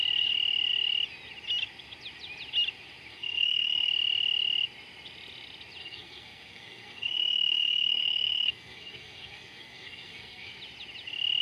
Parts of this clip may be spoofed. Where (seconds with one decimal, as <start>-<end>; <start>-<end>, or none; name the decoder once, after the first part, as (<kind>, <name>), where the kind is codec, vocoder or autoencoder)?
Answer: 3.1-3.9 (codec, SNAC); 5.8-10.6